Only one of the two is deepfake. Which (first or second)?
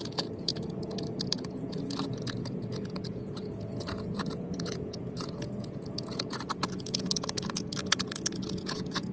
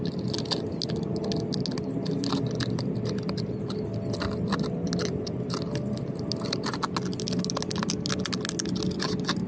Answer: first